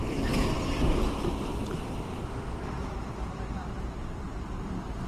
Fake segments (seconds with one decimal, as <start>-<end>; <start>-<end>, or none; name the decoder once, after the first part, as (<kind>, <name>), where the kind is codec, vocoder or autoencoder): 1.6-5.1 (vocoder, BigVGAN v2)